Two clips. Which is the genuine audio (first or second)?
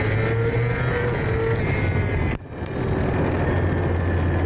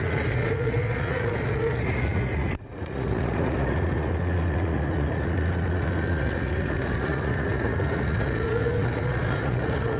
first